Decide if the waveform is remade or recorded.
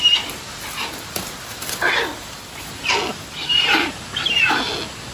recorded